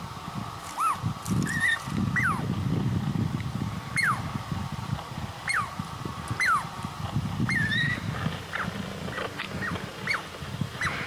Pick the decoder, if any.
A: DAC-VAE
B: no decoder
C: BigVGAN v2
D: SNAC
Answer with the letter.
B